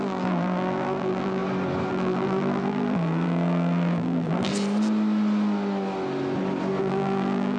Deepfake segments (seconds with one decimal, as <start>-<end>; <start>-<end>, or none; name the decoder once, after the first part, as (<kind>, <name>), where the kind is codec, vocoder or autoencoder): 0.0-1.4 (vocoder, BigVGAN v2); 1.9-4.5; 6.8-7.6